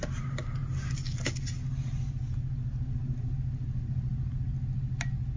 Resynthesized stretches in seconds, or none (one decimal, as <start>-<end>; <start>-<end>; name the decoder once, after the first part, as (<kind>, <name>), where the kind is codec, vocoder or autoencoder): none